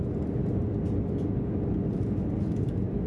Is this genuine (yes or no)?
yes